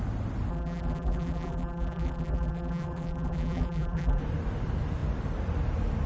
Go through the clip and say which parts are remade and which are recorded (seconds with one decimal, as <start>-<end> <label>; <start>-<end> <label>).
0.0-0.5 recorded; 0.5-4.2 remade; 4.2-6.1 recorded